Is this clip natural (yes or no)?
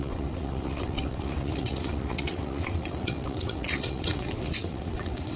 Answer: no